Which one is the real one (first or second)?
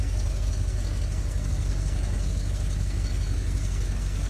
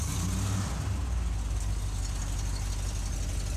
second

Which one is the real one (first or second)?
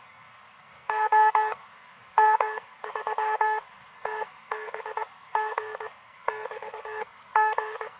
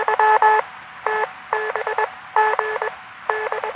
second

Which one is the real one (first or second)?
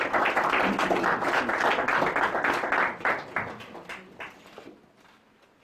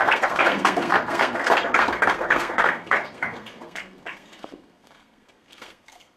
first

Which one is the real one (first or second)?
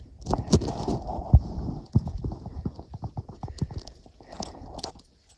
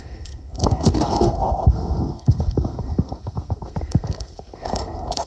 first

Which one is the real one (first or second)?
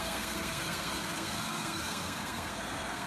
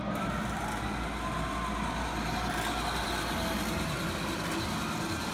second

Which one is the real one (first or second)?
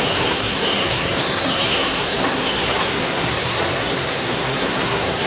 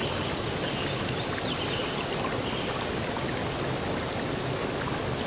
second